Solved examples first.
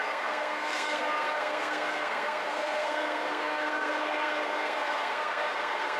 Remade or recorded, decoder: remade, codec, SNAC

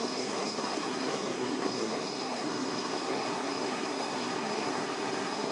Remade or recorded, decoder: remade, codec, SNAC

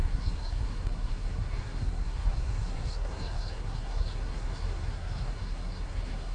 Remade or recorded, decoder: remade, codec, SNAC